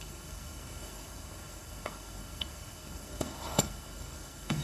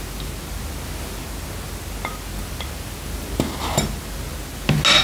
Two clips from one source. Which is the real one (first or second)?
second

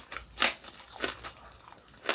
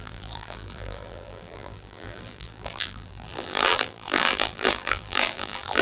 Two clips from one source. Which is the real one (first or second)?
first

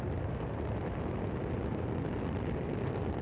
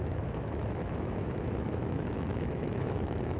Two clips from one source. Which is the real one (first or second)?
first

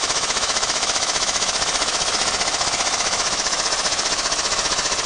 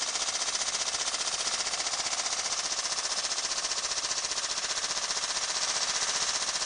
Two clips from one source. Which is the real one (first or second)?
second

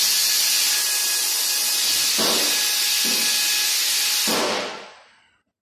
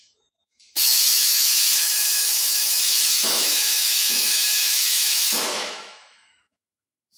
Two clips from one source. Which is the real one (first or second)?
first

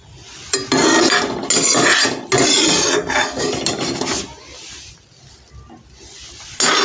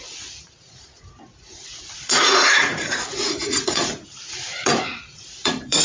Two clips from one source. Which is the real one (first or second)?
first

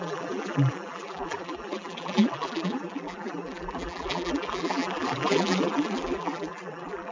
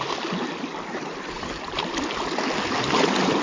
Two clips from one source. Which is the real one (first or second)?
second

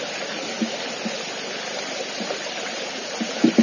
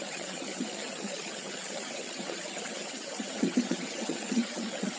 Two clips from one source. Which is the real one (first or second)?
first